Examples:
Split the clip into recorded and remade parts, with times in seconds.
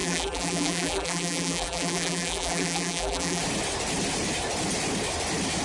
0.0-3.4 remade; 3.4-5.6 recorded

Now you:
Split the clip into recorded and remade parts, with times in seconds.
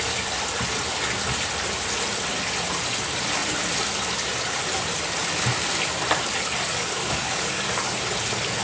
0.0-6.7 recorded; 6.7-8.0 remade; 8.0-8.6 recorded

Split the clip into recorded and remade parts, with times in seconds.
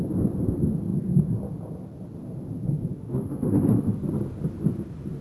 0.0-2.9 recorded; 2.9-3.9 remade; 3.9-5.2 recorded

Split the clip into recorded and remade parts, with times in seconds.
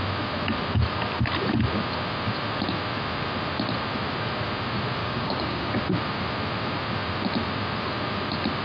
0.0-5.0 recorded; 5.0-5.7 remade; 5.7-8.6 recorded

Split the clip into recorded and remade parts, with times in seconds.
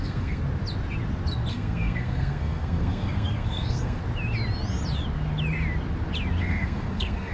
0.0-0.4 remade; 0.4-1.5 recorded; 1.5-4.0 remade; 4.0-6.4 recorded; 6.4-7.3 remade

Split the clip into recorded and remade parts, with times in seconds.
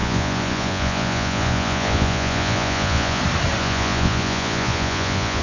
0.0-3.2 remade; 3.2-3.6 recorded; 3.6-5.4 remade